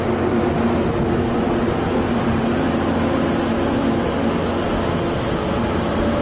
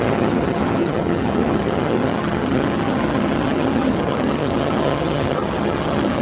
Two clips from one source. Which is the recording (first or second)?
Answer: first